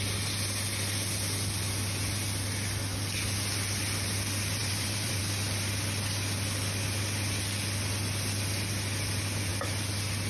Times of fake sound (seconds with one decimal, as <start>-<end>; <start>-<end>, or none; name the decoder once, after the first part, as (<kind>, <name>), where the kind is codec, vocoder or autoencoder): 4.6-5.2 (vocoder, BigVGAN v2)